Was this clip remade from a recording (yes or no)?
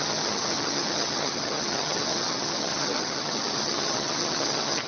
yes